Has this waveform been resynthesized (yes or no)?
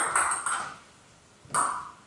no